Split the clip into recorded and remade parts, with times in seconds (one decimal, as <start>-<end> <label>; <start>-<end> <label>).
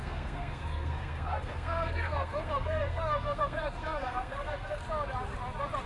0.0-4.8 remade; 4.8-5.9 recorded